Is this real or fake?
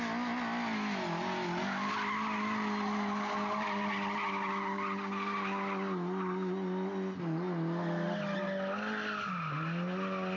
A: real